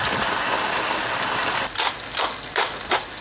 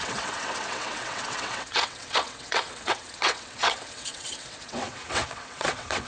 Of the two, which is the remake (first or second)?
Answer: second